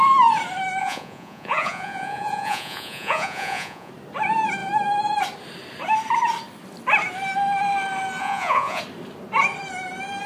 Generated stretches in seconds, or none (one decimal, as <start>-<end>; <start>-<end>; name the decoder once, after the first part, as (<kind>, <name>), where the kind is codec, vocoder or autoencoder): 0.8-3.9 (vocoder, Vocos); 8.2-8.8